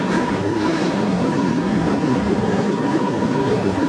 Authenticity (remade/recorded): remade